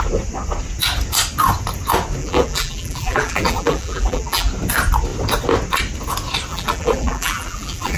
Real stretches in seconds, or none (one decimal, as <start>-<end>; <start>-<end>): 0.0-2.2; 4.5-6.5